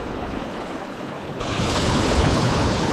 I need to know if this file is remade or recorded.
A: remade